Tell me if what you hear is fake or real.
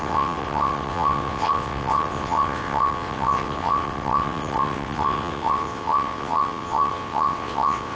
fake